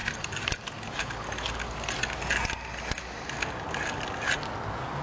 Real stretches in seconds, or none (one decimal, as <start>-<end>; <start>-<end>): 0.0-5.0